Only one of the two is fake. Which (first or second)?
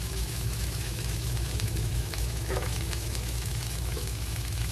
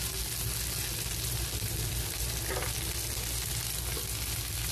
first